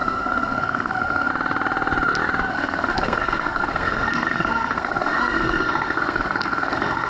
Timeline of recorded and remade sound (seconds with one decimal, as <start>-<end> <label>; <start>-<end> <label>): 0.0-1.3 remade; 1.3-2.5 recorded; 2.5-7.1 remade